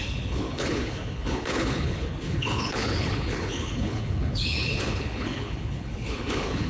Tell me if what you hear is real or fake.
fake